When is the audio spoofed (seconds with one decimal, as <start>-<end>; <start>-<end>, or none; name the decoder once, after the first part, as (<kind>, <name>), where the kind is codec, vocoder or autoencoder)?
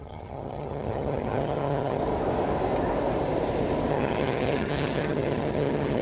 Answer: 0.0-2.0 (vocoder, HiFi-GAN); 3.9-6.0